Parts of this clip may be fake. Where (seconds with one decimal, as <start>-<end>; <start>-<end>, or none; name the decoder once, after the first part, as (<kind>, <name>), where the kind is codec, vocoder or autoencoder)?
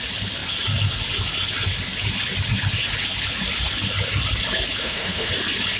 4.8-5.3 (autoencoder, DAC-VAE)